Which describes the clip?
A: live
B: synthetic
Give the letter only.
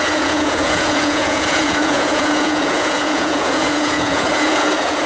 B